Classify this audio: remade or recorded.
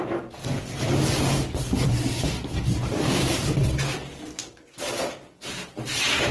recorded